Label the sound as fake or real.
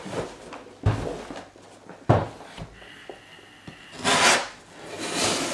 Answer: real